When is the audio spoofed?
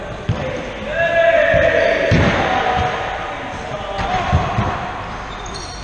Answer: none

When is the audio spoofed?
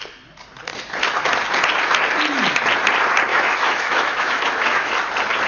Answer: 3.3-4.9